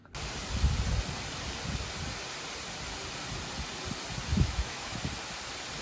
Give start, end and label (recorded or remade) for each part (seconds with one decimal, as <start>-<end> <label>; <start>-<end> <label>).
0.0-4.3 recorded; 4.3-5.0 remade; 5.0-5.8 recorded